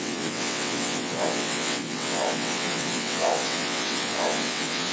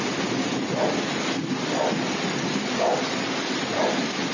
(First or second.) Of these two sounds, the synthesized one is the first